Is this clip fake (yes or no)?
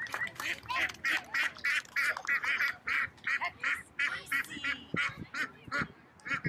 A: no